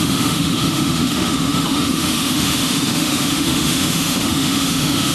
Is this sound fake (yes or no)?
yes